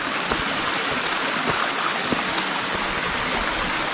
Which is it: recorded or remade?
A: recorded